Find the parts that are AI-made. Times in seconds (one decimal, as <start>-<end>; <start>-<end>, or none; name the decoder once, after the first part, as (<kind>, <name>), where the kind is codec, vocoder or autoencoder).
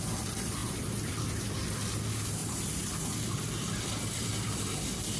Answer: 0.6-1.4 (vocoder, BigVGAN v2); 2.4-4.3